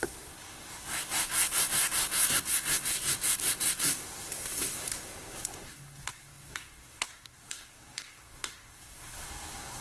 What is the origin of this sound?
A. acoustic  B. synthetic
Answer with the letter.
B